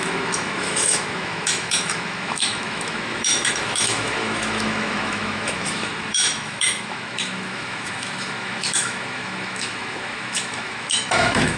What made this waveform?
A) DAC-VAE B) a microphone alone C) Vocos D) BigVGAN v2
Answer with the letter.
A